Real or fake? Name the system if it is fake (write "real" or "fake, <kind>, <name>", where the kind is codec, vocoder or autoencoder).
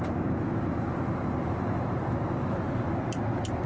real